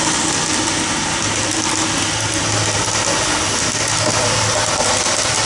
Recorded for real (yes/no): yes